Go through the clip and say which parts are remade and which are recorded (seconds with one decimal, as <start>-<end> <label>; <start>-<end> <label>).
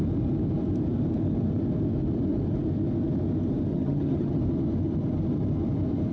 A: 0.0-3.7 recorded; 3.7-4.4 remade; 4.4-6.1 recorded